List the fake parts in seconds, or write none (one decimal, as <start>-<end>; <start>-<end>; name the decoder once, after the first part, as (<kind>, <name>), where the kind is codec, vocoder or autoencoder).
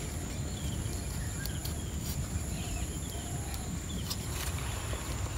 1.6-4.8 (vocoder, BigVGAN v2)